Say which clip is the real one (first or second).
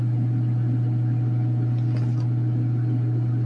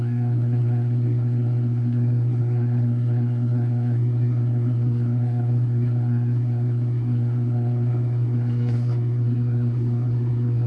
first